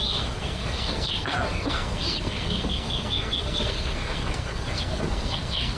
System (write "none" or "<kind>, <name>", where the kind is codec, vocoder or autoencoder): codec, SNAC